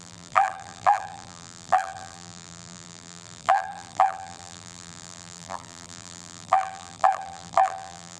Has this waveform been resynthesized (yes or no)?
yes